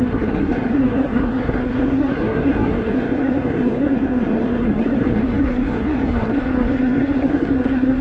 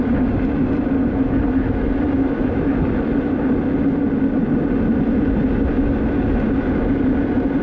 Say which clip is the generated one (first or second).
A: first